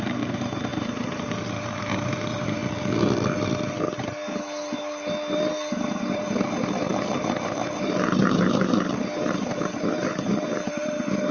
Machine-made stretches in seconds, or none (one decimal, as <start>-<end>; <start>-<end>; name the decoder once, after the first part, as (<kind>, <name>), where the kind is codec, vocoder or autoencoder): 0.0-2.6 (vocoder, BigVGAN v2); 5.7-11.3